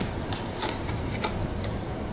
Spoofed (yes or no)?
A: no